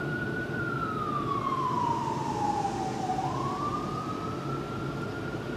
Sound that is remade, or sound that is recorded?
recorded